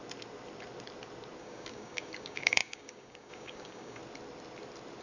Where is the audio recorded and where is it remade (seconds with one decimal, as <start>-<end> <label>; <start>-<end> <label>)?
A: 0.0-1.4 recorded; 1.4-4.0 remade; 4.0-5.0 recorded